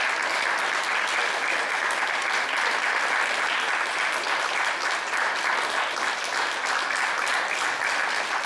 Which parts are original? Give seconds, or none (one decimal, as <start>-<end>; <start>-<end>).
0.0-8.5